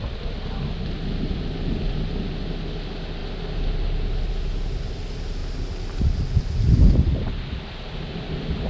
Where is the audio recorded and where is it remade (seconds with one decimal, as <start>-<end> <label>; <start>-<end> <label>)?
0.0-8.7 recorded